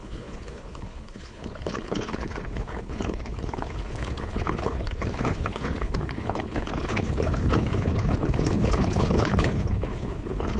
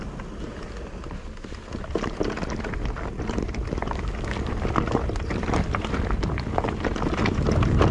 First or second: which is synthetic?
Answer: first